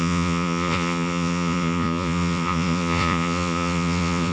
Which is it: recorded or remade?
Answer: remade